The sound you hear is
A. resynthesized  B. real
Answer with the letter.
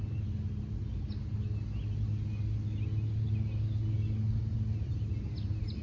B